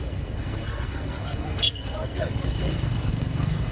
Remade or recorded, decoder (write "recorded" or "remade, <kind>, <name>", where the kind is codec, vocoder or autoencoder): remade, codec, SNAC